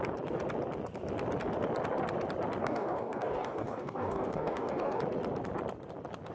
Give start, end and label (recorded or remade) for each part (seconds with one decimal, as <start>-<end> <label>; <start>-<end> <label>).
0.0-2.6 recorded; 2.6-5.0 remade; 5.0-6.3 recorded